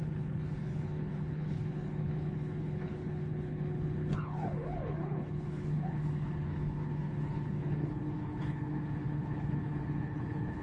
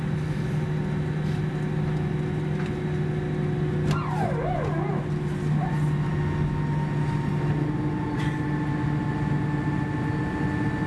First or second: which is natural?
second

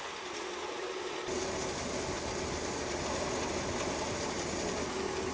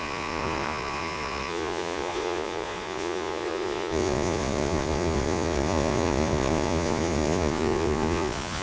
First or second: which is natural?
first